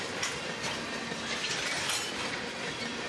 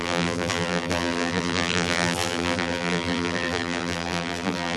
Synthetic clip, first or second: second